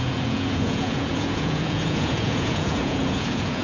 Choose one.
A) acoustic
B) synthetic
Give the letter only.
B